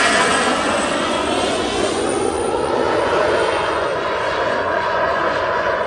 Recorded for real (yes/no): no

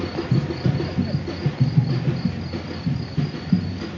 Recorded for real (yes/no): yes